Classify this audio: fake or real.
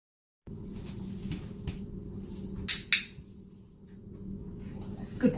real